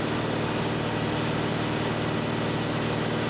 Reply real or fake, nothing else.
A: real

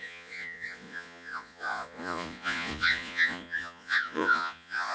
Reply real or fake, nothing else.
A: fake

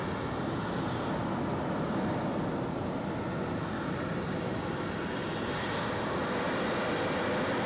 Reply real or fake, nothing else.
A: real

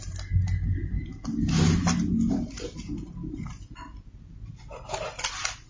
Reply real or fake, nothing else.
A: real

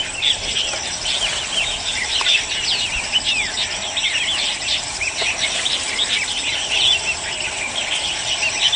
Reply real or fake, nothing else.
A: real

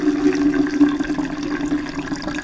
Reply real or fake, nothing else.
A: real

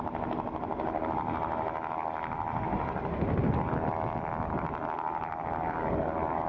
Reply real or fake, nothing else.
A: real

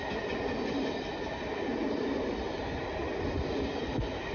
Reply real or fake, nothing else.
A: real